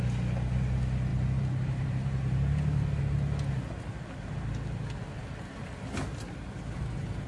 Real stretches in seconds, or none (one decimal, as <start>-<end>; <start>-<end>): 0.0-1.1; 3.0-7.3